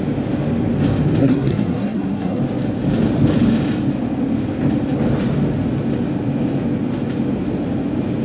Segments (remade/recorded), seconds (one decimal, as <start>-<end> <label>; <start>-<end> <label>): 0.0-1.2 recorded; 1.2-2.4 remade; 2.4-8.2 recorded